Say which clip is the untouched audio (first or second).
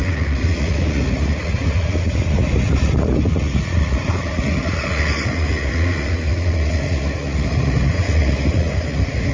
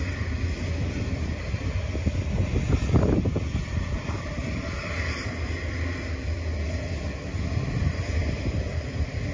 second